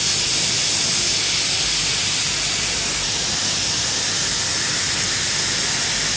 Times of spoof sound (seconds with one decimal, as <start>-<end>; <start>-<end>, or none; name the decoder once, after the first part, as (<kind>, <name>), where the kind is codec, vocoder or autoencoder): none